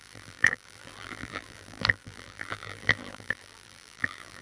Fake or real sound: fake